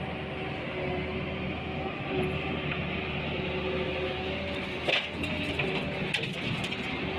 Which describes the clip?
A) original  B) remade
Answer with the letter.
A